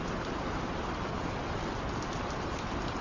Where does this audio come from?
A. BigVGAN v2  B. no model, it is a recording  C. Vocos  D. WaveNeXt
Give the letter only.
B